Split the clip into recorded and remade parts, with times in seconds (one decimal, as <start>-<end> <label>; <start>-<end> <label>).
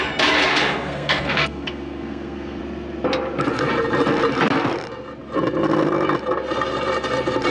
0.0-0.5 recorded; 0.5-2.6 remade; 2.6-7.5 recorded